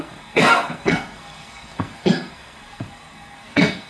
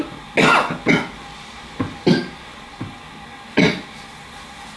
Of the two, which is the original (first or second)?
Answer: second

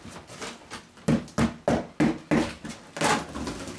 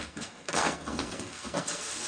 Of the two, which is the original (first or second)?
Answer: first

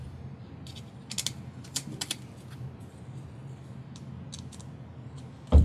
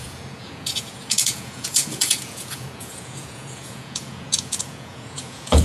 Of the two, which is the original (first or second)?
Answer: first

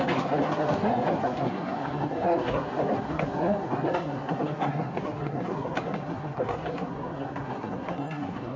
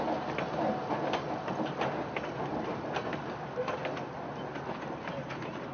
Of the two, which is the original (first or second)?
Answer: second